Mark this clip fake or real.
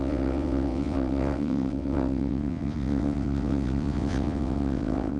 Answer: fake